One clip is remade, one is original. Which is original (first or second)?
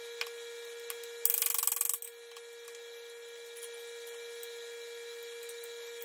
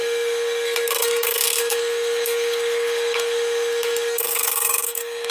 first